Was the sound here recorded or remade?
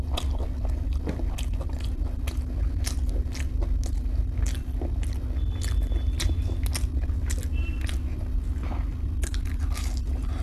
recorded